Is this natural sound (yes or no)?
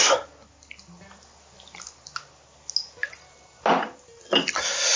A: yes